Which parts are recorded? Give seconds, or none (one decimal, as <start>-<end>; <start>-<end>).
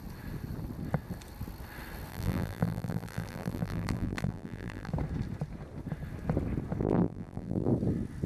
0.0-2.1; 4.9-6.8; 7.7-8.3